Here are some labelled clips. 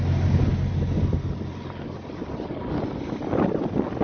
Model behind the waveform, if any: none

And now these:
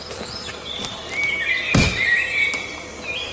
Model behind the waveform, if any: none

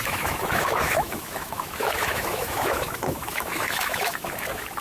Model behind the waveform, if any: autoencoder, DAC-VAE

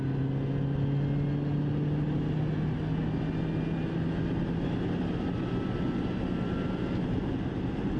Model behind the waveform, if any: none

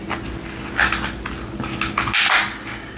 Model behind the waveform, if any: none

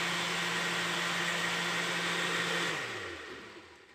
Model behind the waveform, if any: none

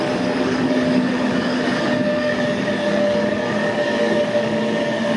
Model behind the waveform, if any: codec, DAC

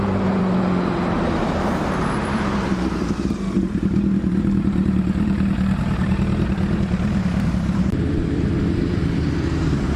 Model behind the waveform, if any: vocoder, BigVGAN v2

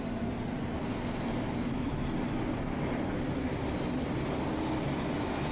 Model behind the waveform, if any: none